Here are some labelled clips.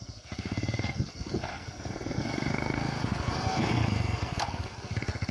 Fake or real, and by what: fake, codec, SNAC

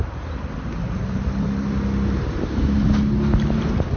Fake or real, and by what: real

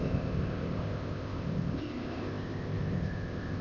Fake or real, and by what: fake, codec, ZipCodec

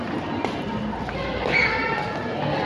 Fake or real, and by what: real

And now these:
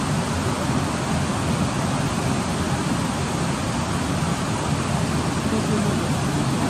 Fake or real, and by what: real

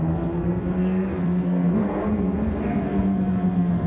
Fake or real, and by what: fake, codec, SNAC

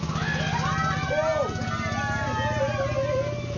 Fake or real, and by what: real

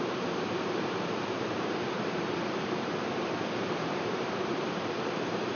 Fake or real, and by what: fake, vocoder, BigVGAN v2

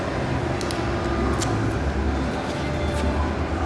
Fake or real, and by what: real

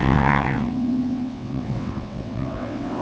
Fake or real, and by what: fake, vocoder, WaveNeXt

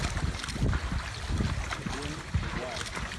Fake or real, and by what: real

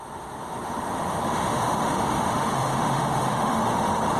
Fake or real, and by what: fake, autoencoder, DAC-VAE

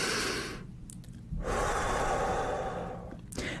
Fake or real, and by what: real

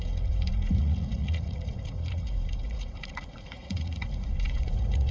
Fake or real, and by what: fake, vocoder, Vocos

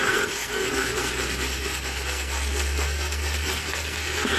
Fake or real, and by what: fake, codec, SNAC